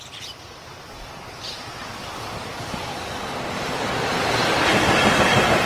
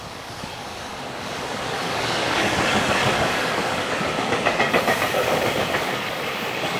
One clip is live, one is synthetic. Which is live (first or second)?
first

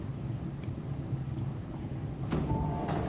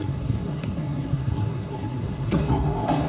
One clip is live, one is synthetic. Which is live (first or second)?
first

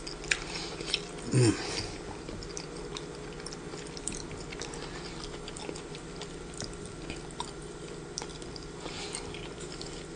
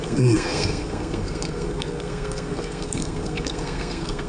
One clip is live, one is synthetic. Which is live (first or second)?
first